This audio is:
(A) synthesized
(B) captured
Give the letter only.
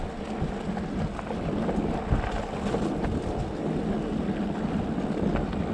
B